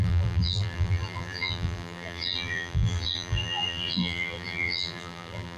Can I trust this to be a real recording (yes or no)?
no